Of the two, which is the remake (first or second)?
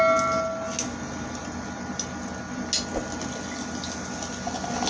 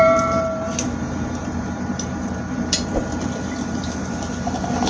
second